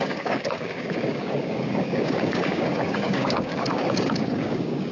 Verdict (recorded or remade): remade